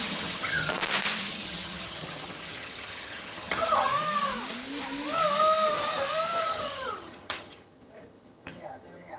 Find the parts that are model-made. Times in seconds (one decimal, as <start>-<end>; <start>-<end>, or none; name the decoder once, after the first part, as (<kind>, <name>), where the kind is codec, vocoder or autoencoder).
0.0-0.7 (vocoder, HiFi-GAN); 1.3-3.9; 6.4-9.2